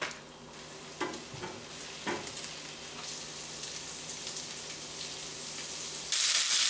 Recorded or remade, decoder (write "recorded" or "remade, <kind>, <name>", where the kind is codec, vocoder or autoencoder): recorded